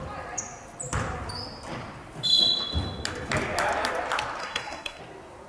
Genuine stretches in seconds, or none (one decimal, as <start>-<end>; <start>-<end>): 0.0-4.4; 5.0-5.5